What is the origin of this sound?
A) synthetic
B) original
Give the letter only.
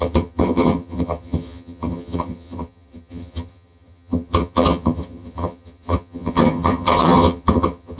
A